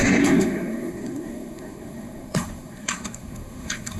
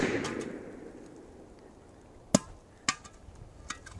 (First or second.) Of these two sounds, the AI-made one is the first